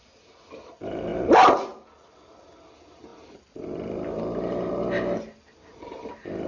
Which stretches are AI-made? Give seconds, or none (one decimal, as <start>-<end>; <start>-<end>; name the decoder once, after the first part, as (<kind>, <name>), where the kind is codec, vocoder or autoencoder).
none

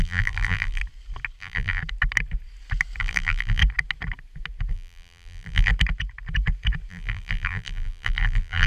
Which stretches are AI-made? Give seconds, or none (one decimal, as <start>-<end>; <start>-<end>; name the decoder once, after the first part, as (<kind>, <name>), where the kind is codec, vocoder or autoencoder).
0.0-0.8 (vocoder, BigVGAN v2); 1.4-1.8; 3.0-3.6; 4.7-5.7; 6.9-8.7

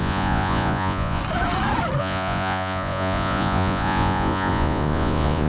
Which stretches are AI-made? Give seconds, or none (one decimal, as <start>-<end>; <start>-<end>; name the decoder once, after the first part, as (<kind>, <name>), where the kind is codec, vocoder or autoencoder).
0.0-1.2 (vocoder, Vocos); 2.0-5.5

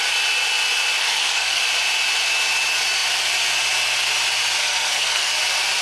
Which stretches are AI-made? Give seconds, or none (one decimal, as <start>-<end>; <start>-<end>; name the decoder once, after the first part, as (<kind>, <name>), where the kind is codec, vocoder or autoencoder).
1.0-1.6 (codec, SNAC); 4.6-5.3

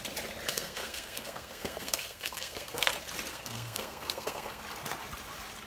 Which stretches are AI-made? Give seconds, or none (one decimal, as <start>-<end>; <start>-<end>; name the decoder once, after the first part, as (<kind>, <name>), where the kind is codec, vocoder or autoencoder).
0.5-2.9 (codec, SNAC); 3.3-4.6